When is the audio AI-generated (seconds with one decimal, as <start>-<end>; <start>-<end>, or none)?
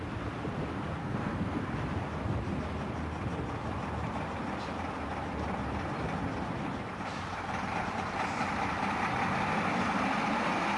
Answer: 1.0-1.6